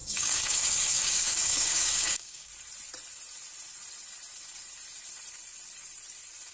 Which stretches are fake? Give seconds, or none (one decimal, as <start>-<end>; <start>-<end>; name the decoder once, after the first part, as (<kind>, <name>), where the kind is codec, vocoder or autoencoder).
0.0-2.5 (codec, DAC)